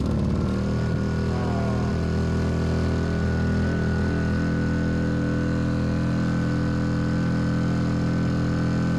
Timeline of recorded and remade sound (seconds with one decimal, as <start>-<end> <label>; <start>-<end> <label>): 0.0-9.0 recorded